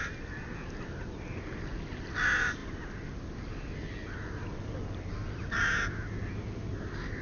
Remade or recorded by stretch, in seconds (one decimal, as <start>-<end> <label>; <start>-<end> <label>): 0.0-7.2 recorded